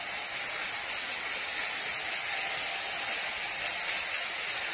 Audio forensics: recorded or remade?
recorded